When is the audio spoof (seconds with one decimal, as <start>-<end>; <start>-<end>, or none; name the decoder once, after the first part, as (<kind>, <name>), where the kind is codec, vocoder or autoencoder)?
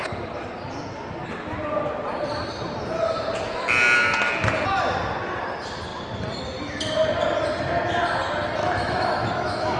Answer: 8.6-9.8 (autoencoder, DAC-VAE)